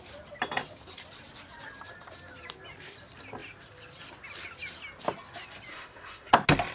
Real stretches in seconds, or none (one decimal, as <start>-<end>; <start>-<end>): 0.0-5.7; 6.3-6.7